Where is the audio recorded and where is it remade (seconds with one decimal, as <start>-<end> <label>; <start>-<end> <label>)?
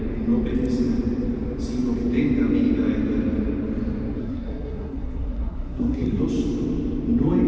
0.0-4.2 recorded; 4.2-6.2 remade; 6.2-7.5 recorded